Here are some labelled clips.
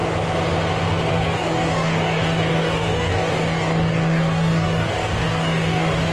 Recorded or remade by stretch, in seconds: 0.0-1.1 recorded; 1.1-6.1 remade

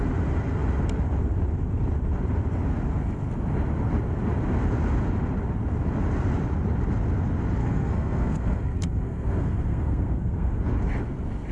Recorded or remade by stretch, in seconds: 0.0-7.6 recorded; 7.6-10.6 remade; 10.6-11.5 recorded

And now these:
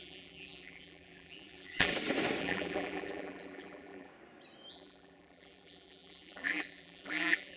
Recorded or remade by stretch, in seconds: 0.0-1.9 remade; 1.9-2.4 recorded; 2.4-4.1 remade; 4.1-4.7 recorded; 4.7-7.6 remade